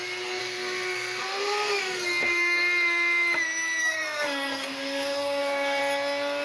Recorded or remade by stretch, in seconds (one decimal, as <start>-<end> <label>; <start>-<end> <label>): 0.0-0.4 recorded; 0.4-2.6 remade; 2.6-3.8 recorded; 3.8-5.8 remade; 5.8-6.4 recorded